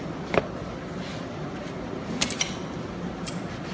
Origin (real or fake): real